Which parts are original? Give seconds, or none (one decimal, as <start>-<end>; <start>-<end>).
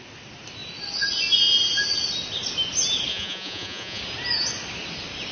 0.0-3.1; 4.0-5.3